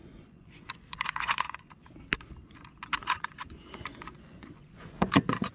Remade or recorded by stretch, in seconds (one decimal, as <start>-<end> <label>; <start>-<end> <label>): 0.0-1.7 remade; 1.7-3.0 recorded; 3.0-5.5 remade